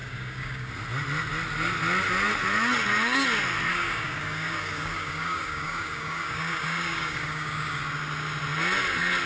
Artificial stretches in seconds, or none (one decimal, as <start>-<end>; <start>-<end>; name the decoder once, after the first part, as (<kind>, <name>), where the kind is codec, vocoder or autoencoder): 0.0-0.7 (codec, DAC); 3.7-7.8